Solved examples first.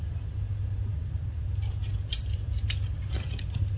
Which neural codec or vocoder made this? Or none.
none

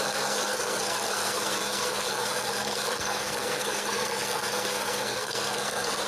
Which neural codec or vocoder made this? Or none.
codec, SNAC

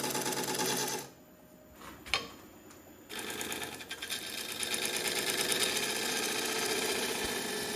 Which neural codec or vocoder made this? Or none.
none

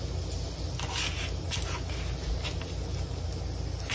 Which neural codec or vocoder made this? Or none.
none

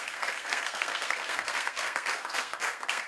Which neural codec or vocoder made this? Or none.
codec, SNAC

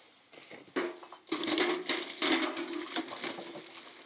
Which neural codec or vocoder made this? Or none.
none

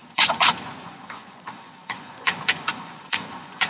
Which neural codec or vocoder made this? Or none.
vocoder, Vocos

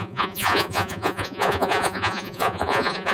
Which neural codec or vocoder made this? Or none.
vocoder, Vocos